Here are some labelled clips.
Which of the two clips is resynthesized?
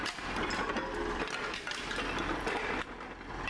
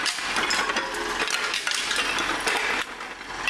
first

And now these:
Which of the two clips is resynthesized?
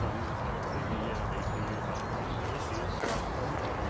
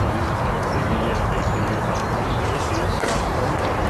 second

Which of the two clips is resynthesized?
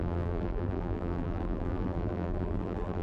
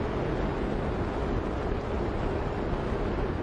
first